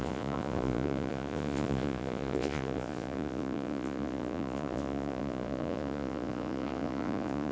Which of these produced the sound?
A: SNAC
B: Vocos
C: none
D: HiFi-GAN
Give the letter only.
B